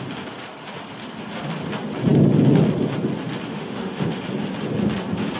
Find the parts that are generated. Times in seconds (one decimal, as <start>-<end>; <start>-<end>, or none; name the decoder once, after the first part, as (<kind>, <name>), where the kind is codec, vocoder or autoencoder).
3.5-4.2 (autoencoder, DAC-VAE)